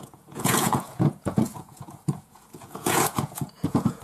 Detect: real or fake fake